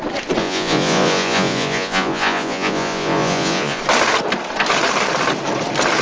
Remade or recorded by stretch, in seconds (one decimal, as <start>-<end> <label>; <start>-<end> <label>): 0.0-0.4 recorded; 0.4-3.8 remade; 3.8-6.0 recorded